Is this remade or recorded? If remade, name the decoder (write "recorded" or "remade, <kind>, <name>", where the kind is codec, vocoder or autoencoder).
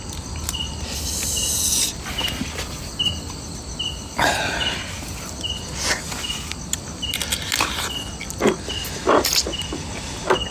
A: recorded